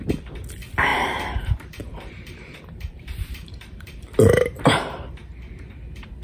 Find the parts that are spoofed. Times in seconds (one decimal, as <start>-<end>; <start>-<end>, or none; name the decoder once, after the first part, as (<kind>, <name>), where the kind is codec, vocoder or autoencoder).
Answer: 0.9-4.6 (vocoder, BigVGAN v2)